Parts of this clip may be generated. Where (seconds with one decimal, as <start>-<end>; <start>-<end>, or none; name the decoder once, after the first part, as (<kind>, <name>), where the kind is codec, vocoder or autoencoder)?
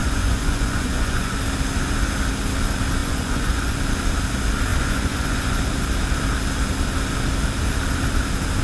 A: 0.0-1.4 (vocoder, Vocos); 3.0-3.8; 4.7-5.6